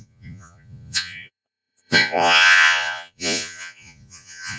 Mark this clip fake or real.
fake